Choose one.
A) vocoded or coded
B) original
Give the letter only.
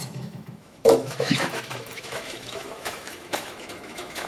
A